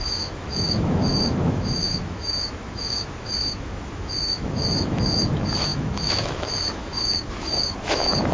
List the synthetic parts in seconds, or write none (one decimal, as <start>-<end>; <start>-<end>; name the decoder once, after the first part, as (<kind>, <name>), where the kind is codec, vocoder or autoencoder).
0.0-8.3 (autoencoder, DAC-VAE)